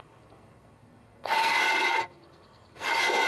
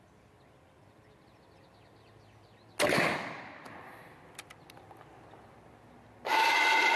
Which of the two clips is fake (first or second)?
first